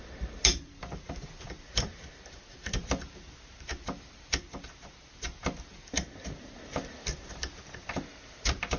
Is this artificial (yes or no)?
yes